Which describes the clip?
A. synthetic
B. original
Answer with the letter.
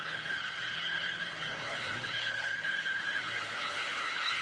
A